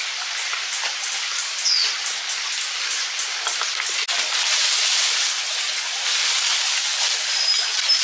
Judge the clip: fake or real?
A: real